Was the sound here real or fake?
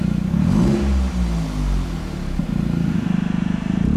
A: real